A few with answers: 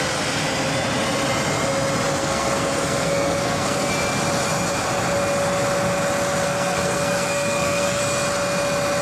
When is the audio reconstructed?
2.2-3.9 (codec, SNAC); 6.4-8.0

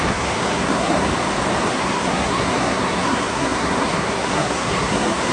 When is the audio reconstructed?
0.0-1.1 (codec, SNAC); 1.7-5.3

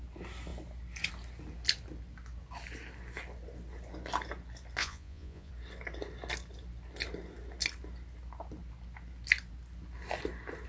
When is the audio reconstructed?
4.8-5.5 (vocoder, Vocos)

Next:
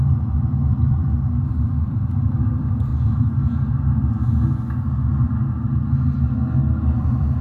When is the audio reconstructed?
0.0-2.9 (vocoder, BigVGAN v2); 7.0-7.4

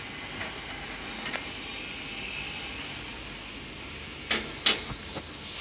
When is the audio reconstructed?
none